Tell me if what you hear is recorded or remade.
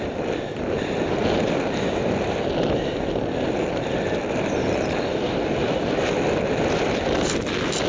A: recorded